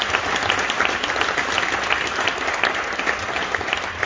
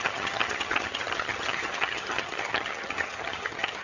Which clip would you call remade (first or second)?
second